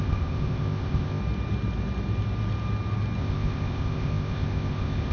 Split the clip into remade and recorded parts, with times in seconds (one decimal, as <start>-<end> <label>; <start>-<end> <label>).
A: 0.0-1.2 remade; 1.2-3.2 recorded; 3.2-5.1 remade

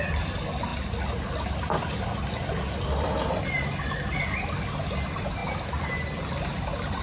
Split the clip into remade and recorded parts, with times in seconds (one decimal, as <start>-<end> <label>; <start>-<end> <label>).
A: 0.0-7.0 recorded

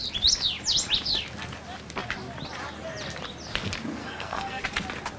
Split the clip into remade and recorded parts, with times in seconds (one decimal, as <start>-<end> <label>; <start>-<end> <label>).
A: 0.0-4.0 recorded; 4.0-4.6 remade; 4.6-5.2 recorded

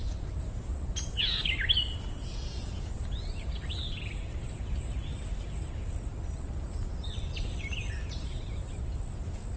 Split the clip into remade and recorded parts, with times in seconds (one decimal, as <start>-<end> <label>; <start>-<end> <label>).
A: 0.0-0.7 remade; 0.7-2.5 recorded; 2.5-6.1 remade; 6.1-7.6 recorded; 7.6-8.6 remade; 8.6-9.6 recorded